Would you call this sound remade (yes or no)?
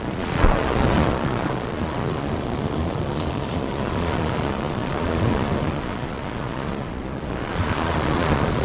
yes